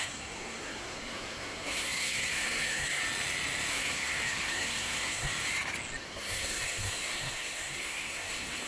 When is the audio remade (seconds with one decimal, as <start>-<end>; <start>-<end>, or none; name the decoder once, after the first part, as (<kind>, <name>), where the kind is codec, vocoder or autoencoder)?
0.0-3.0 (codec, SNAC); 3.7-5.3; 6.0-8.7